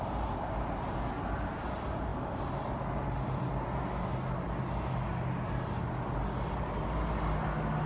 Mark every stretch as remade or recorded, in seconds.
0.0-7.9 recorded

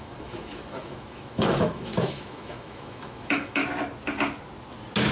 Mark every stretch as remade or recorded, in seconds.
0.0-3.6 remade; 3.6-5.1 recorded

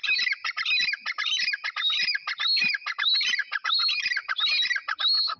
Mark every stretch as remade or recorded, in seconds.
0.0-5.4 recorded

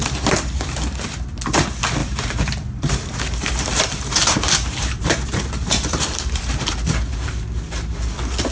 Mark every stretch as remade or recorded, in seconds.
0.0-2.0 recorded; 2.0-6.7 remade; 6.7-8.5 recorded